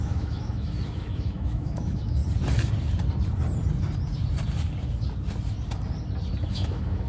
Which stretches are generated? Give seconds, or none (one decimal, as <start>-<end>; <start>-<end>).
0.0-2.2; 6.5-7.1